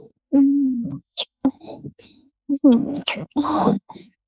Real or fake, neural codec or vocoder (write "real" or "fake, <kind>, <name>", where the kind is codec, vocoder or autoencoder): fake, autoencoder, DAC-VAE